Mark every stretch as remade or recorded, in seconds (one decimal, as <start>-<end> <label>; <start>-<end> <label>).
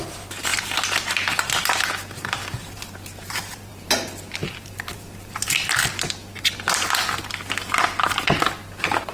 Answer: 0.0-2.6 recorded; 2.6-4.0 remade; 4.0-4.4 recorded; 4.4-5.6 remade; 5.6-9.1 recorded